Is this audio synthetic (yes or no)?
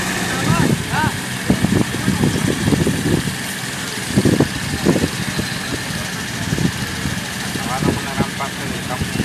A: no